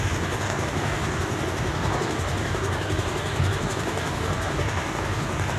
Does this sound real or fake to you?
fake